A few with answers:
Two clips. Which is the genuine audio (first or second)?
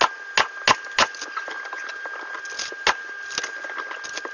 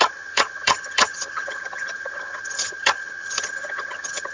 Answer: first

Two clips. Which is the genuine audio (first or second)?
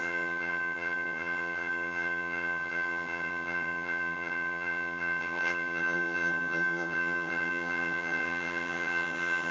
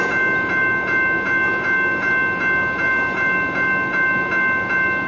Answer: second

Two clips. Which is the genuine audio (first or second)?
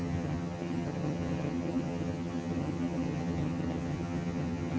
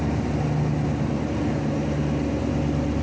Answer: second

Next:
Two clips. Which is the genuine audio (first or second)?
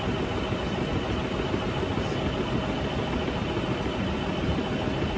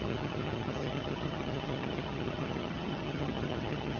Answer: first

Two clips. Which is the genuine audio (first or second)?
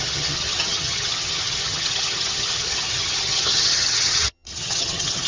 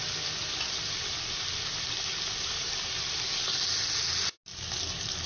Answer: second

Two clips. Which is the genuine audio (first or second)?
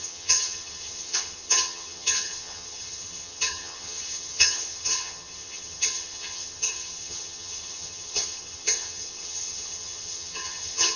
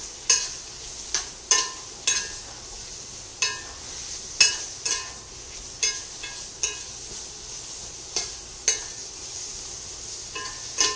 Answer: second